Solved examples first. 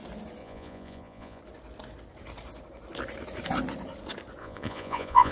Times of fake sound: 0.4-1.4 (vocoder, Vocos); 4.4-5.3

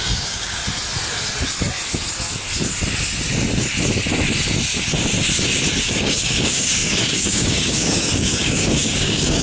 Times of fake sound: 0.0-0.6 (codec, DAC); 5.8-9.4